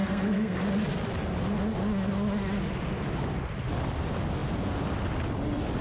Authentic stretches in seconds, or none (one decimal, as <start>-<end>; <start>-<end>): 0.6-5.8

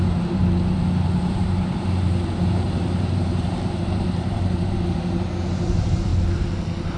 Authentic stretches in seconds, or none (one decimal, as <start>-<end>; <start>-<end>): 6.1-7.0

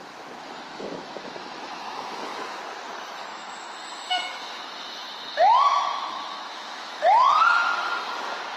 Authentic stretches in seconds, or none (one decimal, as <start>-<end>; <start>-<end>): 2.3-3.3; 7.6-8.6

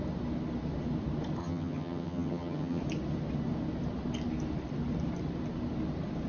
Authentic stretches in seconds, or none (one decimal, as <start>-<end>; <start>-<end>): 0.0-1.4; 2.8-6.3

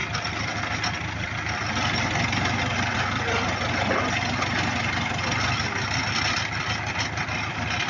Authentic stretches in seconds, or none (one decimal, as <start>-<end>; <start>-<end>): 0.0-7.9